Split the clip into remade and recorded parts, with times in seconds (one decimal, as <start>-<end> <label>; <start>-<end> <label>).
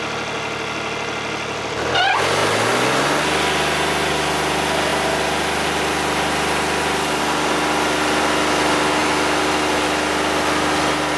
0.0-11.2 recorded